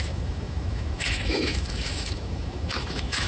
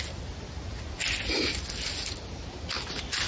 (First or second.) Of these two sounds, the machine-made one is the first